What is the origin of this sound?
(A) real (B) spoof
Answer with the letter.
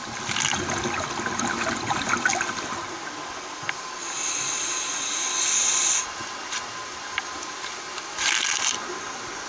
A